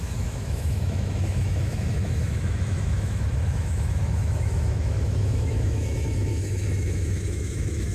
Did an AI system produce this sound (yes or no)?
yes